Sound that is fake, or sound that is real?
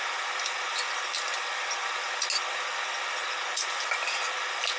real